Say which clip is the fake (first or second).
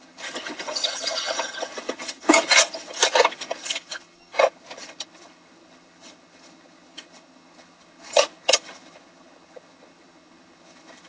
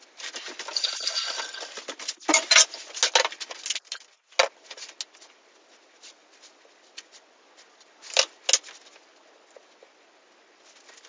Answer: first